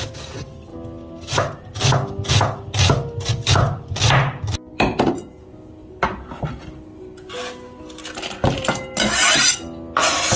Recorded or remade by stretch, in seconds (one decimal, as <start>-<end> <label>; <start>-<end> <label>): 0.0-10.4 recorded